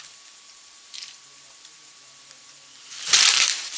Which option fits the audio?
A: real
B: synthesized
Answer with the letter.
B